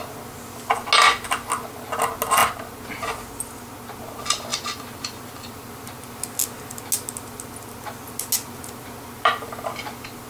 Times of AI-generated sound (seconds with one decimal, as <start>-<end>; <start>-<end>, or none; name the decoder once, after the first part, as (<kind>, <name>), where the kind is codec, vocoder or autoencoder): 4.5-6.2 (vocoder, BigVGAN v2)